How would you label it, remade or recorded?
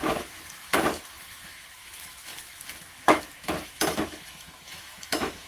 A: remade